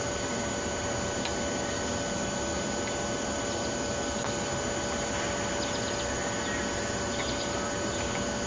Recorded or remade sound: recorded